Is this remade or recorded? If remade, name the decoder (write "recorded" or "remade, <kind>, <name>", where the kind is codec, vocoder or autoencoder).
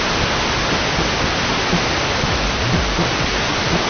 recorded